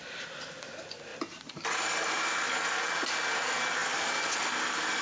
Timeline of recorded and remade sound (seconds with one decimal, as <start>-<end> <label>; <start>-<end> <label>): 0.0-1.1 recorded; 1.1-2.5 remade; 2.5-5.0 recorded